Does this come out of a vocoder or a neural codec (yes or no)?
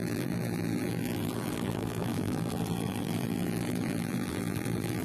yes